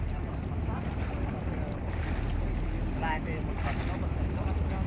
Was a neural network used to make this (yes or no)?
no